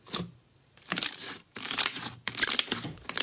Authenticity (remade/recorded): remade